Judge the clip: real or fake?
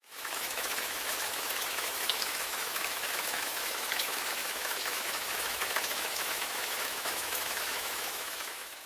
fake